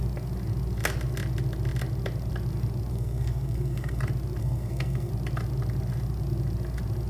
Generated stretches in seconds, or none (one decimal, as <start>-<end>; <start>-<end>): 2.9-4.0; 4.4-5.1